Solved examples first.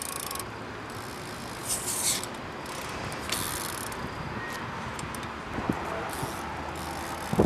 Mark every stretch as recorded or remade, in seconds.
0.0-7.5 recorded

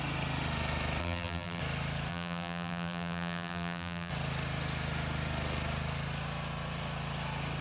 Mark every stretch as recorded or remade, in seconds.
0.0-1.0 recorded; 1.0-1.6 remade; 1.6-2.1 recorded; 2.1-4.1 remade; 4.1-7.6 recorded

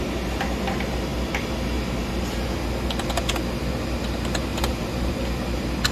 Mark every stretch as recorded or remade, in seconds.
0.0-4.5 recorded; 4.5-5.1 remade; 5.1-5.9 recorded

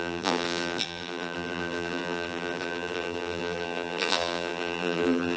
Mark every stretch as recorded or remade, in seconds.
0.0-5.4 remade

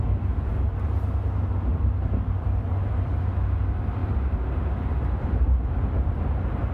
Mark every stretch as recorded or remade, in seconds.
0.0-1.7 recorded; 1.7-3.2 remade; 3.2-6.7 recorded